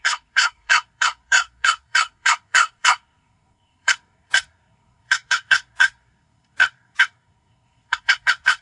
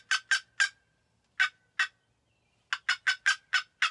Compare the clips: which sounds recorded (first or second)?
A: second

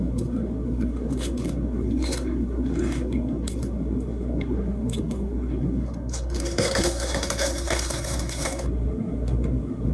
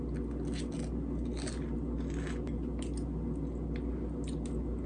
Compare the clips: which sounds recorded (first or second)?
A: second